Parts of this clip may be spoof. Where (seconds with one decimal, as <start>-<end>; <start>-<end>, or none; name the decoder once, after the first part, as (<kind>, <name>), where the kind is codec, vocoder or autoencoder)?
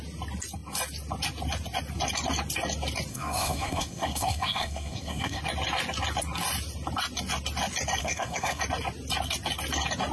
3.1-5.4 (codec, SNAC); 8.0-8.6